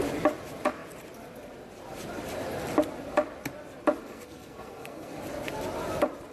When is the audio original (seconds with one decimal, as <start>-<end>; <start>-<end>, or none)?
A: 0.0-4.0; 5.2-6.3

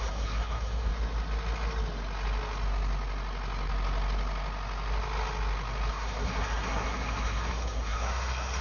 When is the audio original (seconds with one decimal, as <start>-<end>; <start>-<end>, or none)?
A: 0.9-5.9

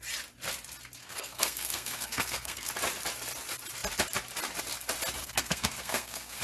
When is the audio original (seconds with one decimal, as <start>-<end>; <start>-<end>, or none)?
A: 0.0-1.0; 2.7-5.2

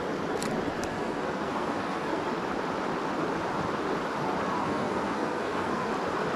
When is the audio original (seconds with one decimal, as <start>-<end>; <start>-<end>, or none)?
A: 0.0-0.9; 2.2-4.6; 5.9-6.4